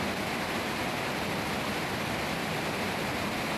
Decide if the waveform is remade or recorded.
recorded